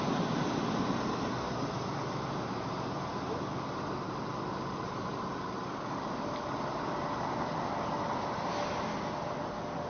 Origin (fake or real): real